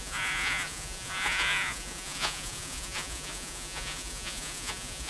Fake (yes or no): yes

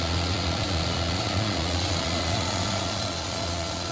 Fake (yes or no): yes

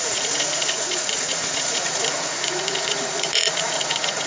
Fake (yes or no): yes